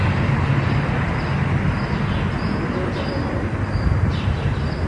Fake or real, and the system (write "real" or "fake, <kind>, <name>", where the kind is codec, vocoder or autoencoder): real